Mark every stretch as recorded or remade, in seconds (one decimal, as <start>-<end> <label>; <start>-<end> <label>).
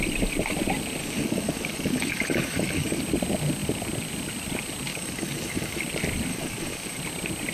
0.0-1.0 recorded; 1.0-3.0 remade; 3.0-4.9 recorded; 4.9-5.8 remade; 5.8-6.3 recorded; 6.3-7.0 remade; 7.0-7.5 recorded